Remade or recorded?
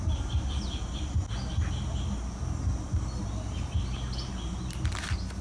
recorded